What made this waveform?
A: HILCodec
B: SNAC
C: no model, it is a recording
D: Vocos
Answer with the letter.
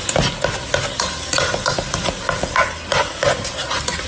C